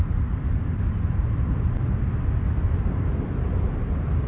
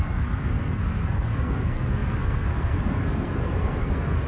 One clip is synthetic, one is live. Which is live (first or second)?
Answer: first